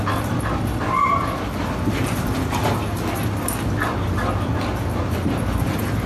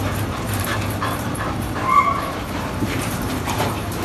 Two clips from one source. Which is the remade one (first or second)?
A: second